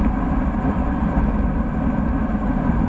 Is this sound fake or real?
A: real